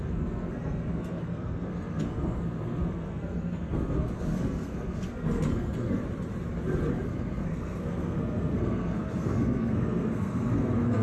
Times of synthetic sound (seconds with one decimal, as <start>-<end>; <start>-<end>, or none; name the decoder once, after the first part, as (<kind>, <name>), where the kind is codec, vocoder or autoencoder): 0.0-6.0 (codec, SNAC); 6.9-11.0